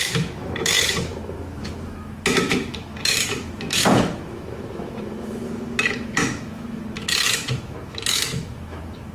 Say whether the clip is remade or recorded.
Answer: remade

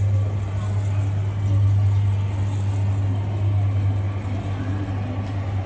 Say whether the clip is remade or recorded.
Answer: recorded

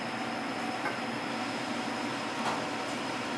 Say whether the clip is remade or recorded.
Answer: recorded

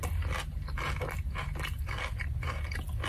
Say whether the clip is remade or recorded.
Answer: recorded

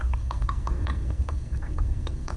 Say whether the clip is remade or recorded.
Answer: remade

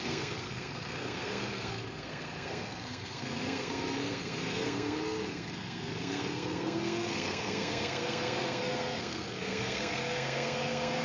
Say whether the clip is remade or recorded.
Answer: remade